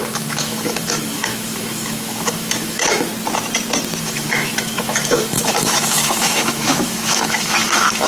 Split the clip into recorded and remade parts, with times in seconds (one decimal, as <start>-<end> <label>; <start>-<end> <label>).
0.0-3.1 remade; 3.1-4.0 recorded; 4.0-8.1 remade